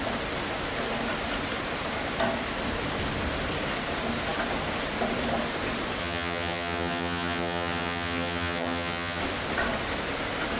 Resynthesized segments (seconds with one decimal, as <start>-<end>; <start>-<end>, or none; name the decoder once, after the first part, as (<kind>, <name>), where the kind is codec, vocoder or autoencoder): 6.0-9.2 (vocoder, HiFi-GAN)